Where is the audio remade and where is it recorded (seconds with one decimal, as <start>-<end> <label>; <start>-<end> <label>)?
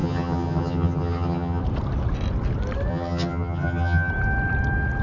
0.0-1.6 remade; 1.6-2.9 recorded; 2.9-4.1 remade; 4.1-5.0 recorded